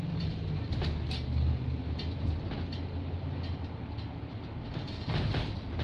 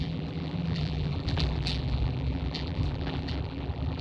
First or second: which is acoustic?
first